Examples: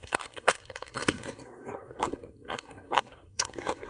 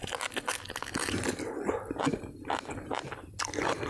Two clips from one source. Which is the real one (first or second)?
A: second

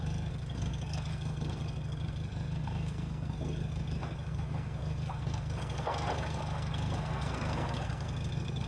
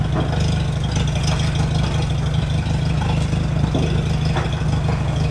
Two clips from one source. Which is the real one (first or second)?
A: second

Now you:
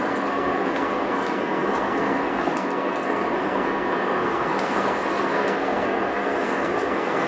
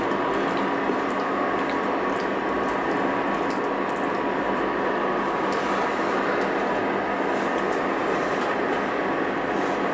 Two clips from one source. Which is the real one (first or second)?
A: second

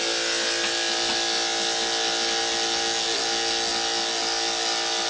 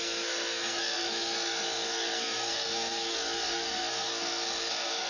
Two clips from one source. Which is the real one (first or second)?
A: first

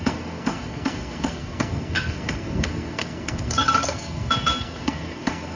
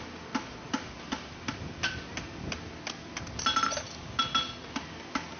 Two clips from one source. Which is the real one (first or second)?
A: second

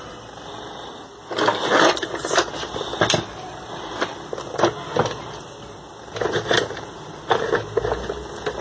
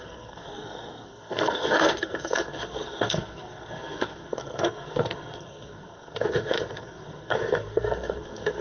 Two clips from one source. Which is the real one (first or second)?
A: first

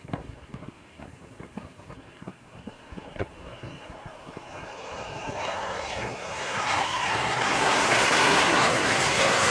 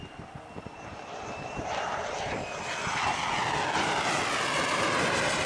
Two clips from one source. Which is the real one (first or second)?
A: second